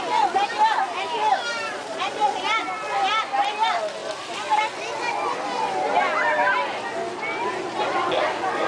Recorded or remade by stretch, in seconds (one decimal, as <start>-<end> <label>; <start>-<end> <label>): 0.0-1.7 recorded; 1.7-2.4 remade; 2.4-8.7 recorded